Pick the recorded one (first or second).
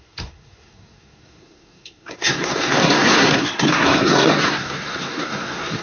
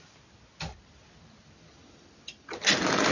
second